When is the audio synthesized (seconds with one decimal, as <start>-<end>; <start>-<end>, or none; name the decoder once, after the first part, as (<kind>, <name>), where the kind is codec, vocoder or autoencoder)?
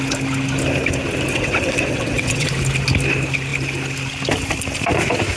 1.3-2.5 (vocoder, WaveNeXt)